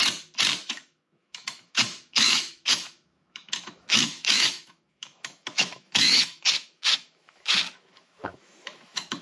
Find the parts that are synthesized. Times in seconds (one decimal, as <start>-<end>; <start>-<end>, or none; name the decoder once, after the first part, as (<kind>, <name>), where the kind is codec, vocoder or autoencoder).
0.7-9.2 (autoencoder, DAC-VAE)